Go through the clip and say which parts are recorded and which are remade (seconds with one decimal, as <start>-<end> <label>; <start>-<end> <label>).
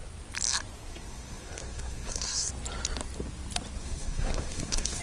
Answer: 0.0-0.9 recorded; 0.9-2.5 remade; 2.5-3.8 recorded; 3.8-5.0 remade